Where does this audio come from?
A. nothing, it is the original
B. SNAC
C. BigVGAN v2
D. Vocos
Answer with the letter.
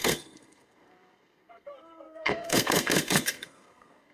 B